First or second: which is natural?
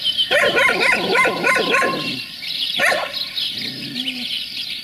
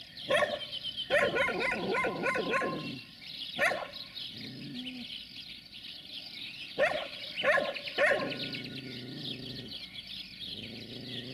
second